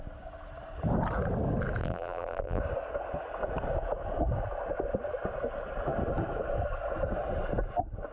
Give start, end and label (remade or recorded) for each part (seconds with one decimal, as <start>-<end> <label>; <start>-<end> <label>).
0.0-1.8 recorded; 1.8-2.6 remade; 2.6-8.1 recorded

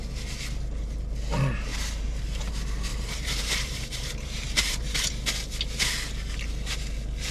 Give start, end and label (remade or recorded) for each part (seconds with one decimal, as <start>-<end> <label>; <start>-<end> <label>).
0.0-1.7 recorded; 1.7-2.5 remade; 2.5-2.9 recorded; 2.9-5.1 remade; 5.1-7.3 recorded